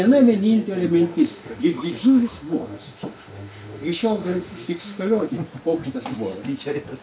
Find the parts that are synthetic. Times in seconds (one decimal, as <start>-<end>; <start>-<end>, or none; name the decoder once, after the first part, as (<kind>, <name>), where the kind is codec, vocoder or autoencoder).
1.1-5.3 (autoencoder, DAC-VAE)